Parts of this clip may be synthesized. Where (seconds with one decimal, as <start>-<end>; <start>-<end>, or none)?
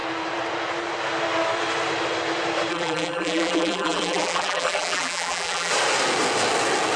2.7-5.7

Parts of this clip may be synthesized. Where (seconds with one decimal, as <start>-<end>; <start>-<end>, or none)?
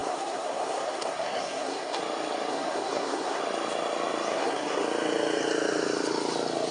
0.0-2.0; 2.5-3.4; 4.3-4.8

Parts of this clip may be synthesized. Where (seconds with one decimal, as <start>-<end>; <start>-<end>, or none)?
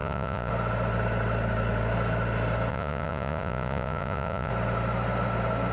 0.0-0.5; 2.7-4.5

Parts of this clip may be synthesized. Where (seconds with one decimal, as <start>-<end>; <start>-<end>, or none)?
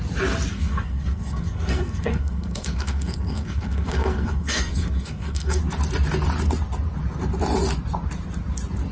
0.5-5.6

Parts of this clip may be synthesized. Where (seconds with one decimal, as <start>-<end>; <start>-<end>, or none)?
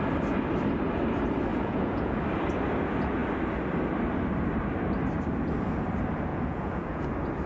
1.5-2.2; 6.3-7.1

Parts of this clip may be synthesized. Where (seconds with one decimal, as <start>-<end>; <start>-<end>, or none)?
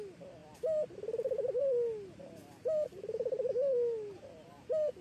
none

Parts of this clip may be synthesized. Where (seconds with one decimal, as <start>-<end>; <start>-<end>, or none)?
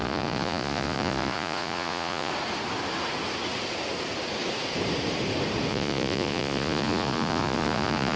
0.0-2.3; 5.7-8.2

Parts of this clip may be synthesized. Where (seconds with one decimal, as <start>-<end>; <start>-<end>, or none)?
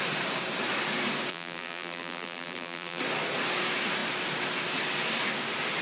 1.3-3.0